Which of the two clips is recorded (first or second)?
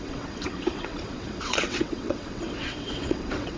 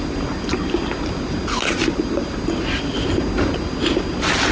second